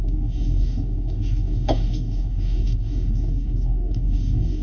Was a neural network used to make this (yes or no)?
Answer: yes